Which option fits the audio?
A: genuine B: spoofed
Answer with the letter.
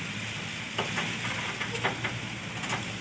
A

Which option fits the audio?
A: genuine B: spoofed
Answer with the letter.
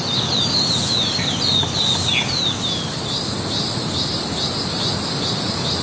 A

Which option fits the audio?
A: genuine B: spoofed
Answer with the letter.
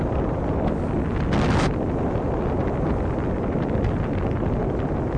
A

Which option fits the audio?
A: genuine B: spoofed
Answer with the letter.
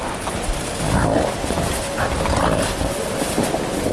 A